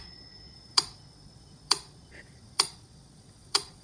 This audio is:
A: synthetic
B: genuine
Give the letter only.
A